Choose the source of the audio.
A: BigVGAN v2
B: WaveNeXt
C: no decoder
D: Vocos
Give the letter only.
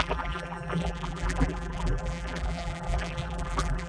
A